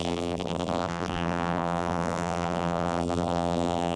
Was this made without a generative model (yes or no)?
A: no